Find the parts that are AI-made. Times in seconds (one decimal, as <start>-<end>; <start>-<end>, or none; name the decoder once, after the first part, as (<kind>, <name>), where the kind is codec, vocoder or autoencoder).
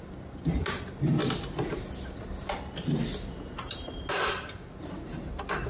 none